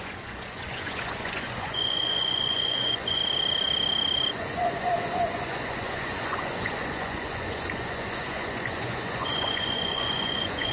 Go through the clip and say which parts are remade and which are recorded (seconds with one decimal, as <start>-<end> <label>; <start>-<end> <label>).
0.0-3.2 remade; 3.2-4.3 recorded; 4.3-10.7 remade